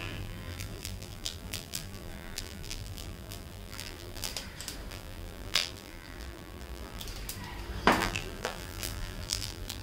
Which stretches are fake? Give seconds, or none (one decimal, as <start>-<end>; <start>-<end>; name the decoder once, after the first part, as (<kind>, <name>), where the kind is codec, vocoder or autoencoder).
0.0-4.3 (vocoder, BigVGAN v2); 4.9-7.0; 8.0-9.8